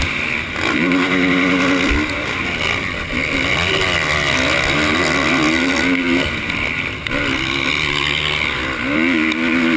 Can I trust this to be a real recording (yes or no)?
yes